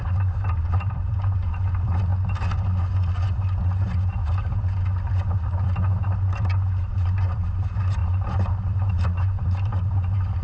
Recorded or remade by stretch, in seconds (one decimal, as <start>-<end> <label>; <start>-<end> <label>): 0.0-2.1 remade; 2.1-6.9 recorded; 6.9-10.4 remade